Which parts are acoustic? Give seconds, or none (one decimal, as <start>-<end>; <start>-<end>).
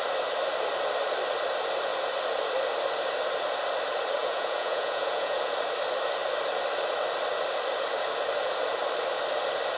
0.0-4.2; 5.5-9.8